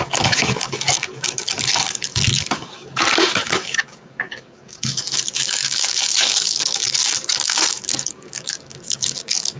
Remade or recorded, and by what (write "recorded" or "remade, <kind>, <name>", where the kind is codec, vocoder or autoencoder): remade, codec, DAC